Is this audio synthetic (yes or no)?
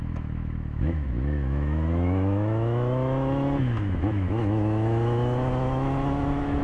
yes